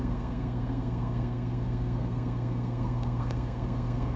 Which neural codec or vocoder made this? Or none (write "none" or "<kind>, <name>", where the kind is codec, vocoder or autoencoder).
codec, SNAC